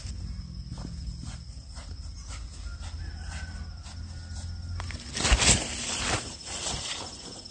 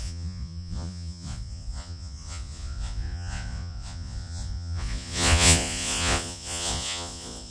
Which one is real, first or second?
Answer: first